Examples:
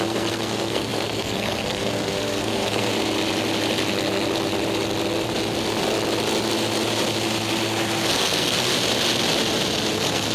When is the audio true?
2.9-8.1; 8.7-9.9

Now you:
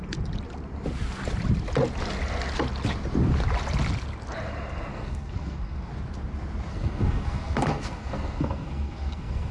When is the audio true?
0.0-4.9; 5.9-6.7

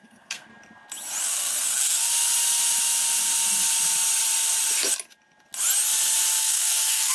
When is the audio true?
0.5-1.2; 2.1-6.4

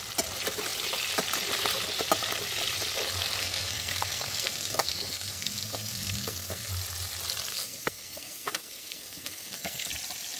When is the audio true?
0.0-3.4; 6.7-7.5; 9.9-10.4

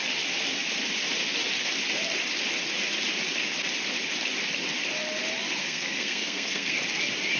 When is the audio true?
0.0-5.6; 6.8-7.4

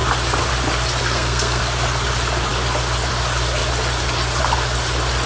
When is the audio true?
0.0-1.0; 1.6-5.3

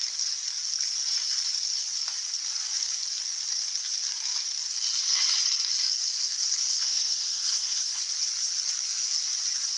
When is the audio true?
0.0-6.7; 8.0-9.8